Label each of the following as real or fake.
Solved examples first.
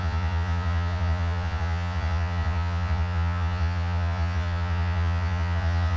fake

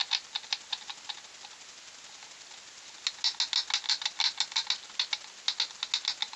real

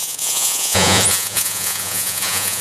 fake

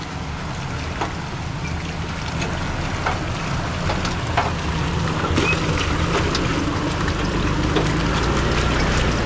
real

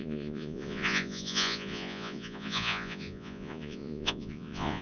fake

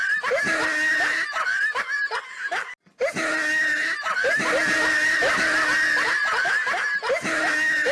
real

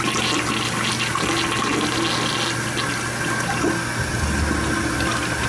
real